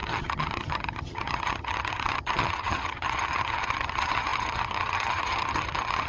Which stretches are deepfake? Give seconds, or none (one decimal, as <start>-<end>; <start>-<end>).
0.0-6.1